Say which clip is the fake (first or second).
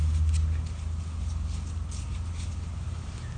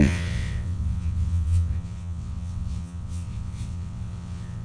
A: second